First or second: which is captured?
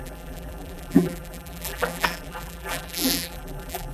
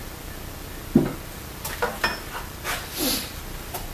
second